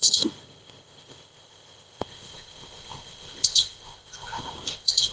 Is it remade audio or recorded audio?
remade